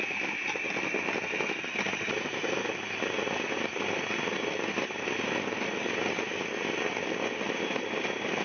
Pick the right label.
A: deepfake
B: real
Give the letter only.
B